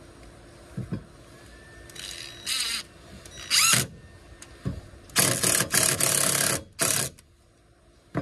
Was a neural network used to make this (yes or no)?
no